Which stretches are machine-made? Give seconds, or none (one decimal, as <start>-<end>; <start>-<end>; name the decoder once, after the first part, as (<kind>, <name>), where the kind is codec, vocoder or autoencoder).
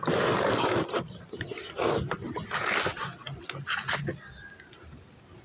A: none